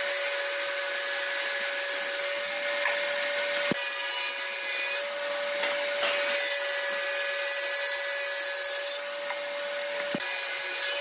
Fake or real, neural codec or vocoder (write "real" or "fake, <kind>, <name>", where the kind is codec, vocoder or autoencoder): real